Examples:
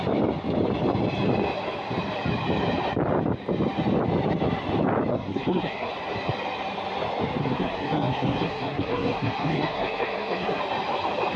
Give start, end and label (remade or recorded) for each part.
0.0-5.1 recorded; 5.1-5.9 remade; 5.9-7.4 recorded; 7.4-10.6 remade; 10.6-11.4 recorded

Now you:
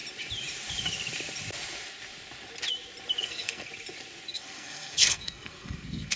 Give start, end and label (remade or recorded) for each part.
0.0-3.2 recorded; 3.2-3.7 remade; 3.7-4.3 recorded; 4.3-6.2 remade

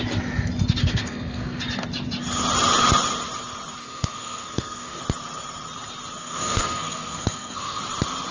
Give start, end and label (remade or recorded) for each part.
0.0-0.8 recorded; 0.8-1.6 remade; 1.6-3.8 recorded; 3.8-5.0 remade; 5.0-6.2 recorded; 6.2-7.8 remade; 7.8-8.3 recorded

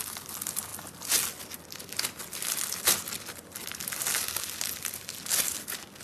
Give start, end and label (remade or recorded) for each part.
0.0-6.0 recorded

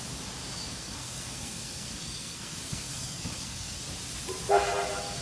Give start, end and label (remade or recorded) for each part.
0.0-0.7 recorded; 0.7-3.8 remade; 3.8-5.2 recorded

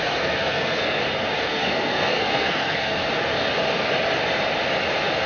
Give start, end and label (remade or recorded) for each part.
0.0-1.0 remade; 1.0-1.5 recorded; 1.5-3.0 remade; 3.0-5.3 recorded

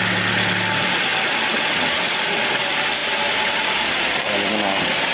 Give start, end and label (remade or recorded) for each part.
0.0-5.1 recorded